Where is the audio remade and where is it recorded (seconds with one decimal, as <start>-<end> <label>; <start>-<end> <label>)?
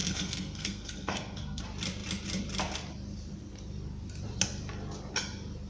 0.0-1.6 remade; 1.6-5.7 recorded